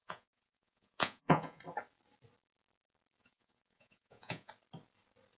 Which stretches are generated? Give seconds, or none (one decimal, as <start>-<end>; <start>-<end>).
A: 0.0-1.6; 3.2-4.5